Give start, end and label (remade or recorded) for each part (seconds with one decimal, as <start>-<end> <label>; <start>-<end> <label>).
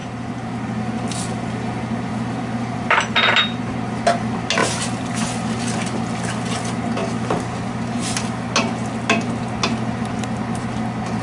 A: 0.0-11.2 recorded